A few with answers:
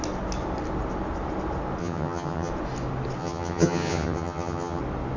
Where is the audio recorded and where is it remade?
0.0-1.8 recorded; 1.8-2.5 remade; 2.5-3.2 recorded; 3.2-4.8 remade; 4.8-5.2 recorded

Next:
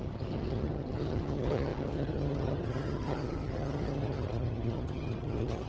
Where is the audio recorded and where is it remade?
0.0-5.7 remade

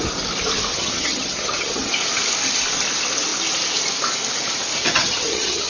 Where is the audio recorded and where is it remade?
0.0-0.7 recorded; 0.7-1.9 remade; 1.9-4.8 recorded; 4.8-5.7 remade

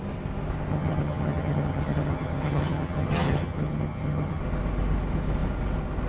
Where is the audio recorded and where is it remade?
0.0-0.7 recorded; 0.7-4.4 remade; 4.4-6.1 recorded

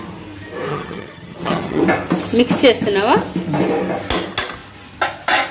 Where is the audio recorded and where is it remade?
0.0-0.7 recorded; 0.7-1.8 remade; 1.8-5.5 recorded

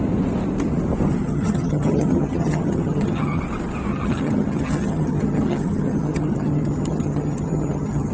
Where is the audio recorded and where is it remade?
0.0-1.2 recorded; 1.2-3.4 remade; 3.4-3.9 recorded; 3.9-8.1 remade

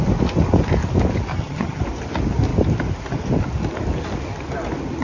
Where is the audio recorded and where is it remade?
0.0-1.3 recorded; 1.3-1.8 remade; 1.8-5.0 recorded